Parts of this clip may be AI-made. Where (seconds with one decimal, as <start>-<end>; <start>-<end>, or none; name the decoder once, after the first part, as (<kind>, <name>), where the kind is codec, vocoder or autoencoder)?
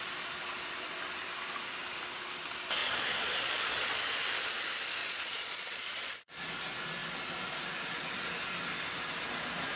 2.8-4.0 (vocoder, Vocos); 5.0-6.5